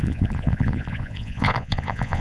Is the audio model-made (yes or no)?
yes